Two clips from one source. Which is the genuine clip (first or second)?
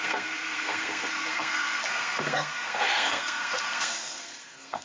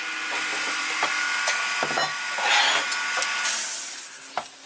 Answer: second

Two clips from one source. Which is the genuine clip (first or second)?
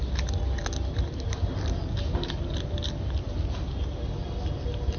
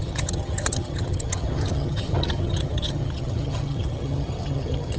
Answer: first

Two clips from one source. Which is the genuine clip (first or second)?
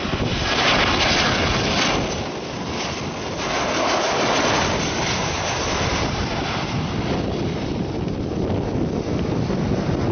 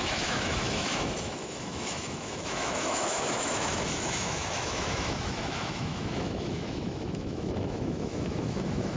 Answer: first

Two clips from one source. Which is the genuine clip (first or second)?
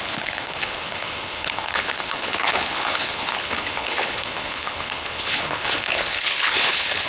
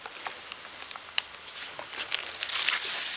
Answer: second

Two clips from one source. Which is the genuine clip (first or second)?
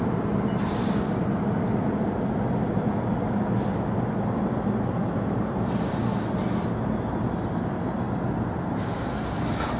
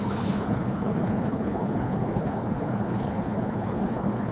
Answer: first